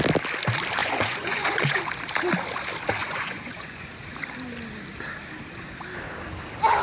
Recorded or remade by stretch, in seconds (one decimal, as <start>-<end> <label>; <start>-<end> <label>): 0.0-0.8 recorded; 0.8-1.8 remade; 1.8-3.0 recorded; 3.0-3.9 remade; 3.9-6.8 recorded